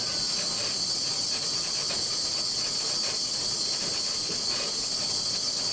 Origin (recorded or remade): recorded